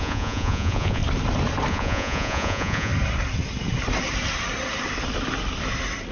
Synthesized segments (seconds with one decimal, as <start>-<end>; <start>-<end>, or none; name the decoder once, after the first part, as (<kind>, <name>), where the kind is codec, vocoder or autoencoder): 0.0-1.0 (vocoder, Vocos); 1.7-2.9